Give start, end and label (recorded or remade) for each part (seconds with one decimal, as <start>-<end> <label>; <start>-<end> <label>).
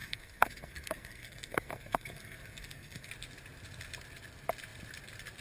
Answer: 0.0-3.1 remade; 3.1-5.4 recorded